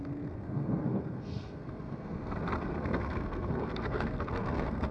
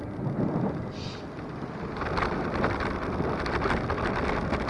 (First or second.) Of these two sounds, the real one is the second